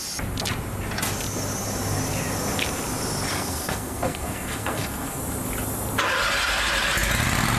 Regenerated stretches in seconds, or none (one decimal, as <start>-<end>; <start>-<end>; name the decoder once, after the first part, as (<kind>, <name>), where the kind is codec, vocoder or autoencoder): 3.3-5.2 (codec, SNAC)